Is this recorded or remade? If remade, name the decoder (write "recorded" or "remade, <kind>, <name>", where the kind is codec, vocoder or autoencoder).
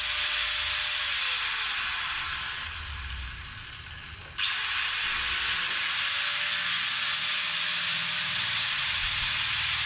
recorded